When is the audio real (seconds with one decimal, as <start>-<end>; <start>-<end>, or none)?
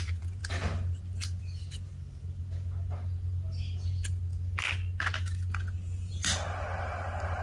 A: 0.0-7.4